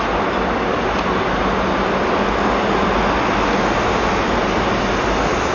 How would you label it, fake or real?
real